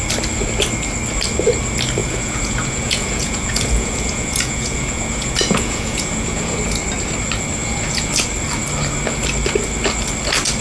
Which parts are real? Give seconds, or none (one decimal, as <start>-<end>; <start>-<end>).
0.0-2.0; 6.6-7.6; 8.1-10.6